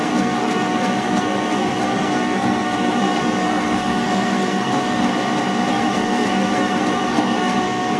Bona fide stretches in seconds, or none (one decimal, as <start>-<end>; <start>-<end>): 5.1-5.7